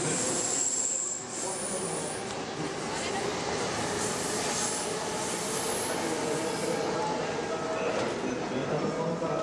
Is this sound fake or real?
real